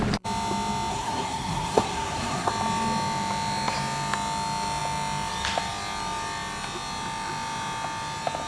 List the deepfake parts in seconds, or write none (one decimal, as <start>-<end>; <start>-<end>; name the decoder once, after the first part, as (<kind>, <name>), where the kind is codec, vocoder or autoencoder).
0.9-2.5 (codec, SNAC)